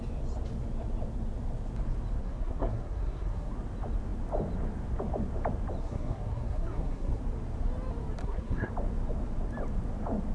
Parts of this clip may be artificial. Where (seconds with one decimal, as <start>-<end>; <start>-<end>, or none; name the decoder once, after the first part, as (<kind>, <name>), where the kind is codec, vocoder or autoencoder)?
2.2-3.5 (codec, SNAC); 5.8-7.2; 8.2-8.7